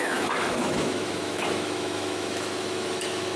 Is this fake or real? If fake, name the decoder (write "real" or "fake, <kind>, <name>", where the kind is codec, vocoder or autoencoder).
fake, autoencoder, DAC-VAE